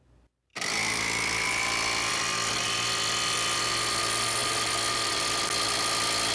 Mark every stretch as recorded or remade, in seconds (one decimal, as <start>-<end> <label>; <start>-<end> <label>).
0.0-6.3 recorded